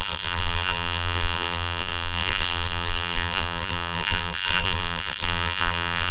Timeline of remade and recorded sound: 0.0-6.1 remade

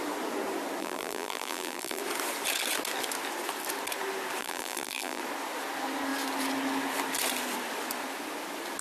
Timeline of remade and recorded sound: 0.0-0.8 recorded; 0.8-2.0 remade; 2.0-4.4 recorded; 4.4-5.2 remade; 5.2-8.8 recorded

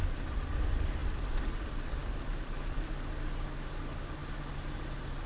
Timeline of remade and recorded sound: 0.0-5.3 recorded

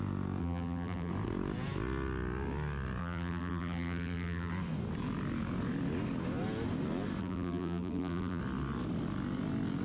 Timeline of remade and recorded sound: 0.0-0.4 recorded; 0.4-1.1 remade; 1.1-3.0 recorded; 3.0-4.5 remade; 4.5-7.2 recorded; 7.2-8.4 remade; 8.4-9.8 recorded